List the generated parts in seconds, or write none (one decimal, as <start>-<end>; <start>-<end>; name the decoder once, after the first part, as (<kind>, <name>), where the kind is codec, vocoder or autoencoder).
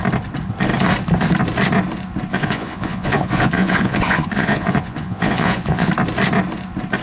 2.3-5.9 (vocoder, Vocos)